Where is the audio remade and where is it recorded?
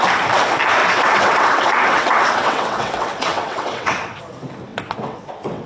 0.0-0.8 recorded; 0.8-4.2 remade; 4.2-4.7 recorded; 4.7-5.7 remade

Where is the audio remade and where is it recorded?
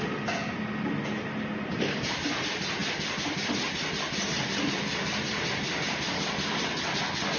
0.0-7.4 recorded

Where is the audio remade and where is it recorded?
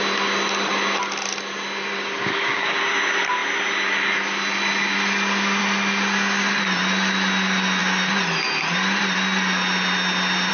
0.0-1.9 recorded; 1.9-2.8 remade; 2.8-10.5 recorded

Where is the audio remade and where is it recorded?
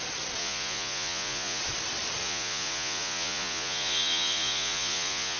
0.0-0.4 recorded; 0.4-1.6 remade; 1.6-2.2 recorded; 2.2-5.4 remade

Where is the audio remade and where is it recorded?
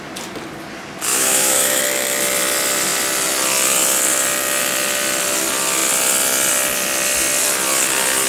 0.0-1.1 recorded; 1.1-1.8 remade; 1.8-8.3 recorded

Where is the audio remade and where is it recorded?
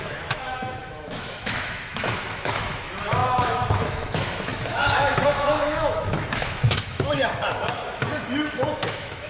0.0-9.3 remade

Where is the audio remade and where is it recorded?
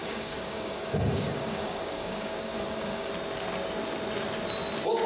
0.0-3.1 remade; 3.1-5.1 recorded